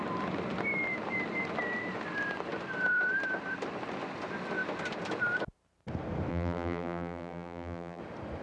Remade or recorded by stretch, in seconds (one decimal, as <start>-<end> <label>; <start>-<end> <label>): 0.0-6.3 recorded; 6.3-8.0 remade; 8.0-8.4 recorded